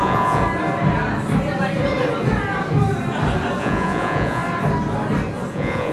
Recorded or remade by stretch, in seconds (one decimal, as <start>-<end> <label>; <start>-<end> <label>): 0.0-0.4 remade; 0.4-3.6 recorded; 3.6-4.4 remade; 4.4-5.5 recorded; 5.5-5.9 remade